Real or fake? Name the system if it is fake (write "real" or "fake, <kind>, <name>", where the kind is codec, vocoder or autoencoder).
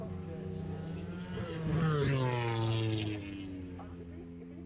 real